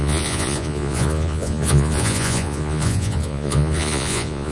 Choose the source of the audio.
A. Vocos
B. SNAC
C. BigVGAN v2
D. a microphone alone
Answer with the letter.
A